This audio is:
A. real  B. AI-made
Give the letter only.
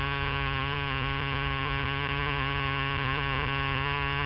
B